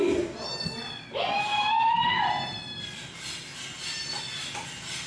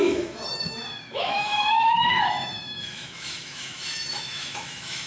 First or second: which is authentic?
first